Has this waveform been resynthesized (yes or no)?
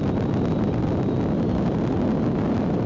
no